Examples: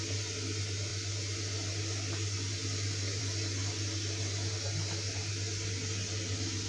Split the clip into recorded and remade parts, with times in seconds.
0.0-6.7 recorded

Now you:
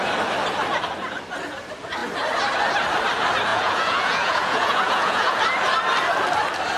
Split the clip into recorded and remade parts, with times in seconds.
0.0-3.5 recorded; 3.5-5.4 remade; 5.4-6.8 recorded

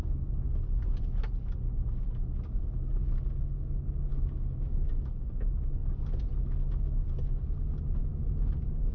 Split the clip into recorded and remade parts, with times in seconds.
0.0-4.1 recorded; 4.1-4.8 remade; 4.8-8.9 recorded

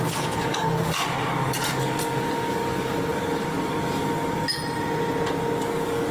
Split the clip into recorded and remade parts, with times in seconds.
0.0-4.6 remade; 4.6-5.6 recorded; 5.6-6.1 remade

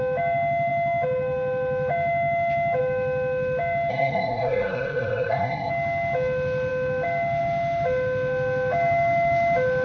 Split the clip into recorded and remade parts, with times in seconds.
0.0-3.9 recorded; 3.9-5.7 remade; 5.7-9.8 recorded

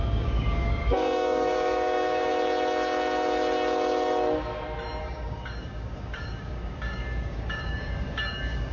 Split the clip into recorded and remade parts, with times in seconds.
0.0-2.3 remade; 2.3-5.0 recorded; 5.0-8.7 remade

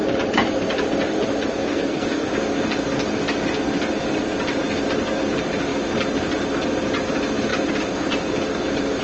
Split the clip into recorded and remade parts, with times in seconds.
0.0-1.7 recorded; 1.7-2.3 remade; 2.3-9.0 recorded

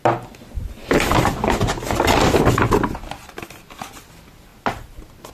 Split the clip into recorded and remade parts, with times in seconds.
0.0-5.3 recorded